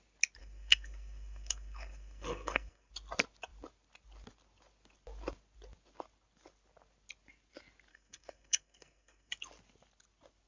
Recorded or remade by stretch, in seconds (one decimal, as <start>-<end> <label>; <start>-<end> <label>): 0.0-0.4 recorded; 0.4-2.9 remade; 2.9-7.9 recorded; 7.9-9.3 remade; 9.3-10.5 recorded